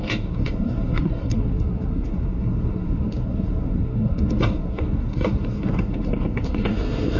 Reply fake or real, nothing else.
fake